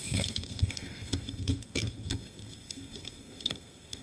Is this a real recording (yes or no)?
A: no